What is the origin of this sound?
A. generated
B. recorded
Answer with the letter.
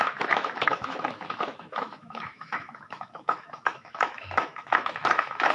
A